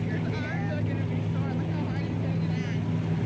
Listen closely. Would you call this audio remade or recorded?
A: recorded